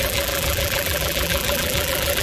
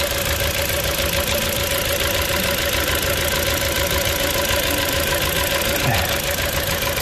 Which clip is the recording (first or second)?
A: second